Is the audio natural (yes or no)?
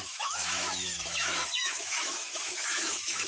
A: no